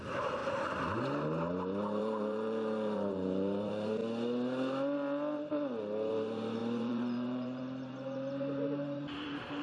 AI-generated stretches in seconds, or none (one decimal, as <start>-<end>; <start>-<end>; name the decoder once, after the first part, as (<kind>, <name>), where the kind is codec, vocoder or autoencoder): 0.0-0.4 (vocoder, BigVGAN v2); 2.0-4.0; 6.1-9.6